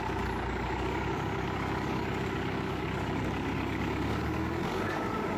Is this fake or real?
fake